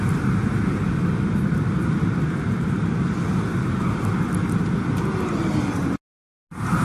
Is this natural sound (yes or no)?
yes